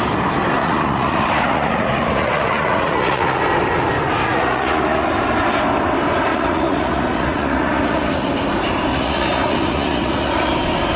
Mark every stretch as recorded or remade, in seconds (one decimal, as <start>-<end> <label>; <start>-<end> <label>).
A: 0.0-0.6 recorded; 0.6-3.4 remade; 3.4-4.2 recorded; 4.2-5.1 remade; 5.1-6.3 recorded; 6.3-8.3 remade; 8.3-8.9 recorded; 8.9-10.5 remade; 10.5-11.0 recorded